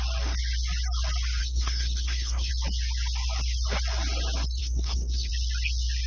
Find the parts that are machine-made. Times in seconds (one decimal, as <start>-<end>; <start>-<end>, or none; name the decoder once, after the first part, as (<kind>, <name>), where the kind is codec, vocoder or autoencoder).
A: 1.4-2.5 (codec, SNAC); 4.6-5.3